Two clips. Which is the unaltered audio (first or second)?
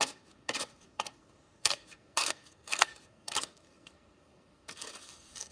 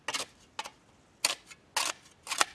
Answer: second